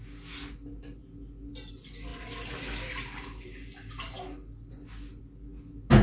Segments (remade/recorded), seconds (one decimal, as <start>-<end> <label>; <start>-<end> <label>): 0.0-6.0 recorded